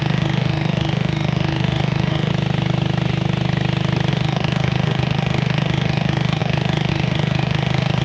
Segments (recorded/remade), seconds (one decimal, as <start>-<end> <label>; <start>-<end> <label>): 0.0-2.3 remade; 2.3-4.1 recorded; 4.1-8.0 remade